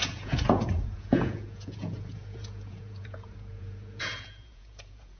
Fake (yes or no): yes